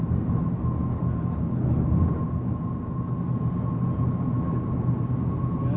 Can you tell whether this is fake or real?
real